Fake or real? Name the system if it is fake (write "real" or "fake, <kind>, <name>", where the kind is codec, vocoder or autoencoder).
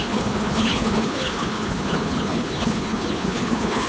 fake, codec, HILCodec